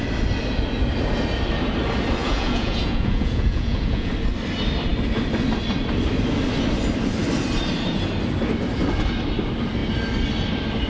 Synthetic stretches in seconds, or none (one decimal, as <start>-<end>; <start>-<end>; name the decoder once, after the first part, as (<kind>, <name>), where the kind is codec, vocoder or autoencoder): 2.2-4.1 (vocoder, Vocos)